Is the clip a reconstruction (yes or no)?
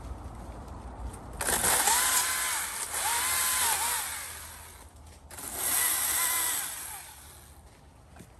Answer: no